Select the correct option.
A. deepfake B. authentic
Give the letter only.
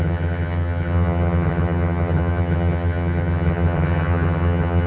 A